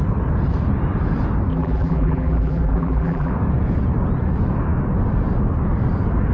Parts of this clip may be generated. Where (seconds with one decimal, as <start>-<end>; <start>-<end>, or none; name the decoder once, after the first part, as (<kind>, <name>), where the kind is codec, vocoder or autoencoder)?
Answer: 1.5-3.3 (vocoder, BigVGAN v2)